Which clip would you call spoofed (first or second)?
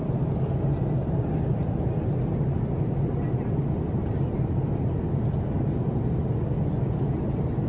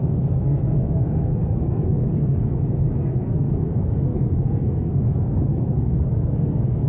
second